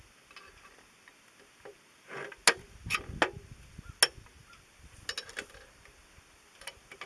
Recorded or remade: recorded